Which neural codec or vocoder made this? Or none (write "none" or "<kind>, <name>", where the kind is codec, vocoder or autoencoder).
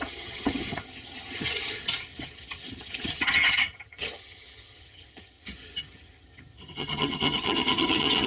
vocoder, HiFi-GAN